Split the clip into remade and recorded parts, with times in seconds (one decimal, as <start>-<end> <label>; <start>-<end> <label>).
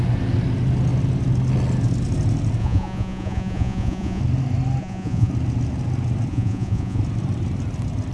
0.0-2.6 recorded; 2.6-4.2 remade; 4.2-4.8 recorded; 4.8-5.3 remade; 5.3-6.3 recorded; 6.3-7.0 remade; 7.0-8.1 recorded